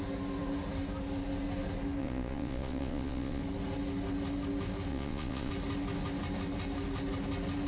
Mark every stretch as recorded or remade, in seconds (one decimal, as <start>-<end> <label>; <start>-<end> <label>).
0.0-2.0 recorded; 2.0-3.4 remade; 3.4-4.9 recorded; 4.9-5.5 remade; 5.5-7.7 recorded